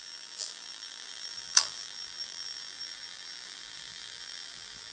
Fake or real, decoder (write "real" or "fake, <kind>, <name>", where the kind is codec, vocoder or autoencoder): fake, vocoder, BigVGAN v2